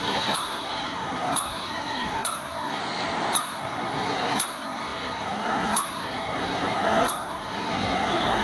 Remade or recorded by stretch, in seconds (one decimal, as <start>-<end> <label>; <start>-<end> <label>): 0.0-2.8 remade; 2.8-3.4 recorded; 3.4-8.4 remade

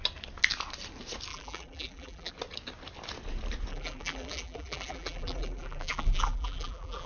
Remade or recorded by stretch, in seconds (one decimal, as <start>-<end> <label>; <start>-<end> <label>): 0.0-1.3 recorded; 1.3-2.3 remade; 2.3-3.7 recorded; 3.7-7.1 remade

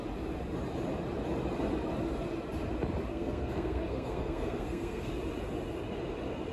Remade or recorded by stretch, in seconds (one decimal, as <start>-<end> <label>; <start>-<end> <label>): 0.0-3.1 recorded; 3.1-5.1 remade; 5.1-6.5 recorded

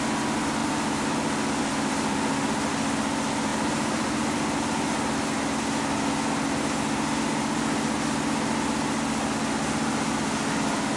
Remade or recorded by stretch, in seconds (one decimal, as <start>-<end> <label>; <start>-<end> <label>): 0.0-0.6 recorded; 0.6-2.7 remade; 2.7-3.5 recorded; 3.5-4.6 remade; 4.6-11.0 recorded

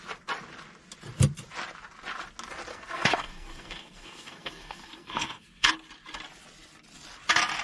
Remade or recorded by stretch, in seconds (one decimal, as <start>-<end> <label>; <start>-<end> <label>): 0.0-2.7 recorded; 2.7-5.7 remade; 5.7-7.6 recorded

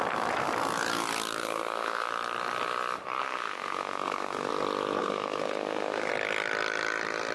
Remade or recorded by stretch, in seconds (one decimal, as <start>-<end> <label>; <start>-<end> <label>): 0.0-1.4 recorded; 1.4-2.1 remade; 2.1-3.2 recorded; 3.2-4.5 remade; 4.5-5.0 recorded; 5.0-6.1 remade; 6.1-7.3 recorded

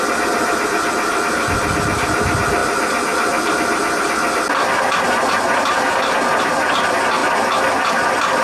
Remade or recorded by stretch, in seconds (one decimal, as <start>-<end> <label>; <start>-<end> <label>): 0.0-8.4 recorded